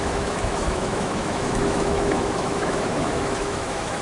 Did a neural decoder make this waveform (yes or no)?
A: yes